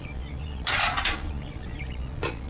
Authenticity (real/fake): fake